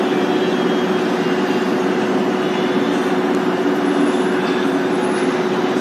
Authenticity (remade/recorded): recorded